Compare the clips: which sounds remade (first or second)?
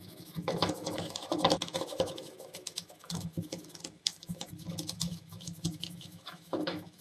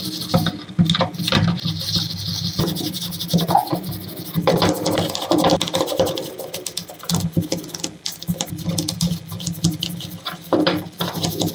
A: first